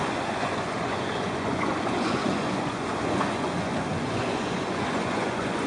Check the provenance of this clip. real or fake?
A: fake